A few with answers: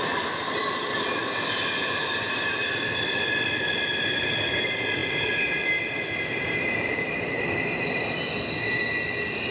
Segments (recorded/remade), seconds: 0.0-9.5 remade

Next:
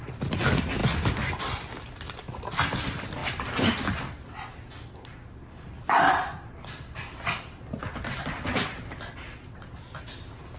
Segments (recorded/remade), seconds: 0.0-10.6 recorded

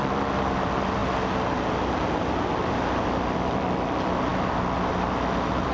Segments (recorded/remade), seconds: 0.0-1.0 remade; 1.0-3.3 recorded; 3.3-4.3 remade; 4.3-4.9 recorded; 4.9-5.7 remade

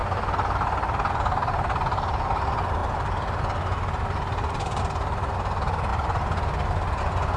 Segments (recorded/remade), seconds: 0.0-1.1 remade; 1.1-5.9 recorded; 5.9-7.0 remade; 7.0-7.4 recorded

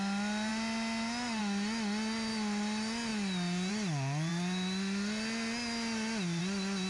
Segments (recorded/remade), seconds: 0.0-6.9 recorded

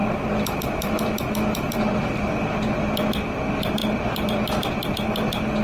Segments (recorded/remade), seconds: 0.0-3.4 remade; 3.4-3.8 recorded; 3.8-4.3 remade; 4.3-5.6 recorded

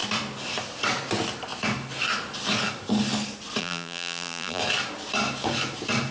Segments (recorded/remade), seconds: 0.0-3.6 recorded; 3.6-4.6 remade; 4.6-6.1 recorded

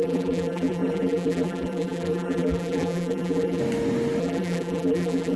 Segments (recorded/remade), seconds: 0.0-3.6 remade; 3.6-4.2 recorded; 4.2-5.4 remade